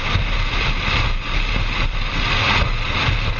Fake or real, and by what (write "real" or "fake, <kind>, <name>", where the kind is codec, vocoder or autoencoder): real